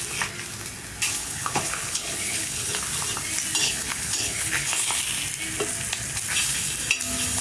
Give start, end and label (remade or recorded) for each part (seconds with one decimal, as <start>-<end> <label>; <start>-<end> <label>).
0.0-1.2 recorded; 1.2-2.7 remade; 2.7-3.6 recorded; 3.6-5.0 remade; 5.0-7.4 recorded

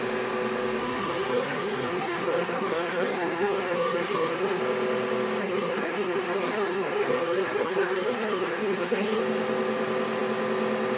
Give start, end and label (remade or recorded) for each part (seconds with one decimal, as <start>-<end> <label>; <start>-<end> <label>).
0.0-0.8 recorded; 0.8-4.6 remade; 4.6-5.4 recorded; 5.4-9.2 remade; 9.2-11.0 recorded

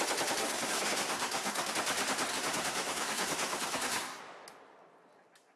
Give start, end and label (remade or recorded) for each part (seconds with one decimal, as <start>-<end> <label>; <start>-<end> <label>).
0.0-0.4 recorded; 0.4-1.7 remade; 1.7-2.3 recorded; 2.3-4.2 remade; 4.2-5.6 recorded